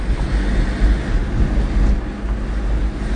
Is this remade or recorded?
recorded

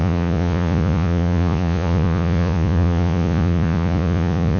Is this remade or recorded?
remade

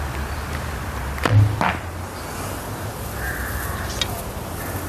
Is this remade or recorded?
recorded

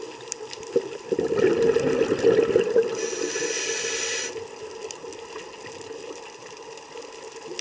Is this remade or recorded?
recorded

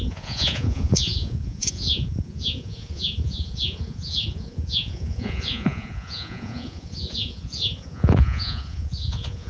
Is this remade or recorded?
remade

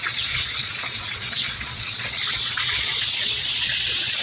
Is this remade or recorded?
remade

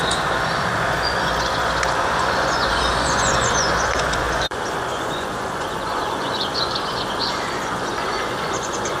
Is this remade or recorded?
remade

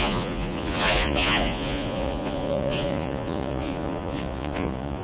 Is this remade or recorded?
remade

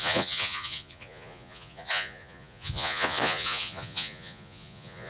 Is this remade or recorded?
remade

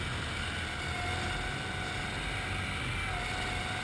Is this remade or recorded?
recorded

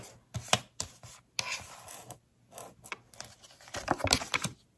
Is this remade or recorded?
recorded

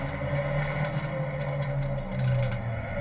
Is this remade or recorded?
recorded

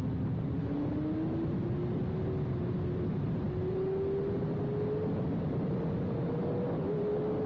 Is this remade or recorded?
recorded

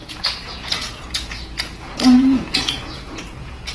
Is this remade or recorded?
remade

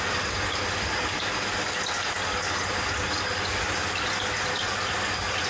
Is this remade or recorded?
recorded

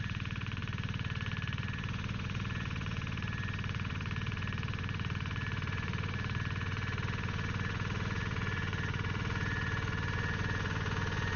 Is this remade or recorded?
remade